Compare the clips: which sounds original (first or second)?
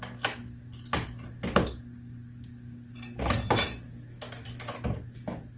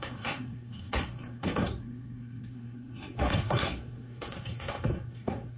first